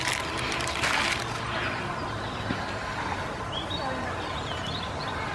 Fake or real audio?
real